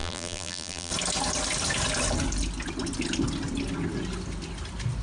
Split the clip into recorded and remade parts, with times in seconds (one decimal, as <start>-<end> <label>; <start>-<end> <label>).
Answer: 0.0-0.9 remade; 0.9-5.0 recorded